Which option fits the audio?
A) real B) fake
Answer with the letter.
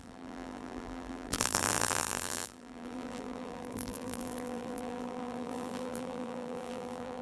B